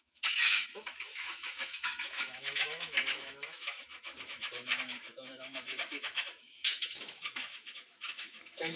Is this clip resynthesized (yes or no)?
yes